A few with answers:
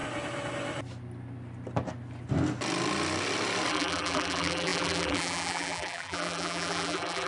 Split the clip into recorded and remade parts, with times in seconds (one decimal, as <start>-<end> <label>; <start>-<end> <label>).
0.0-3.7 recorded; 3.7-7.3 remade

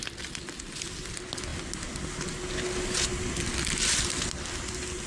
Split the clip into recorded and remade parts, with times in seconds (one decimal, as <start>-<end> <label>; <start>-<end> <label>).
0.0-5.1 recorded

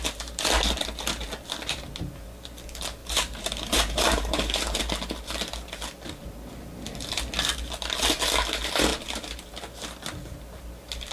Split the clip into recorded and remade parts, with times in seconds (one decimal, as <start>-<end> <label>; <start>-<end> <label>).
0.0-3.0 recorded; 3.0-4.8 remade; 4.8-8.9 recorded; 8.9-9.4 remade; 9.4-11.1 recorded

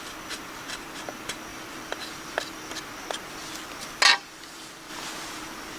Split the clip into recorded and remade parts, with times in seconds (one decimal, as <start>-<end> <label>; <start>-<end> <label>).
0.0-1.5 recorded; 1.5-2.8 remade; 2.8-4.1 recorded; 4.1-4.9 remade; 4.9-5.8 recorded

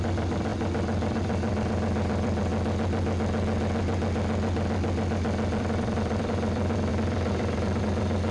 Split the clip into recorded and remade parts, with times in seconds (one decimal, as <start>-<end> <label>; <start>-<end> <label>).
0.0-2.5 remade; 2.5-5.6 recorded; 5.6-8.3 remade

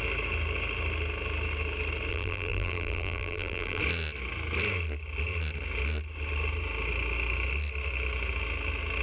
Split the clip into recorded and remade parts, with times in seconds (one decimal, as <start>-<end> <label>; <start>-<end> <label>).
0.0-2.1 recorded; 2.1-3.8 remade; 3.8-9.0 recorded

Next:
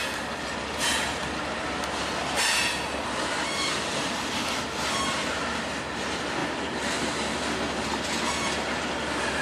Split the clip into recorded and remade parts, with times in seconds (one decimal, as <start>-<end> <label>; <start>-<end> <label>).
0.0-9.4 recorded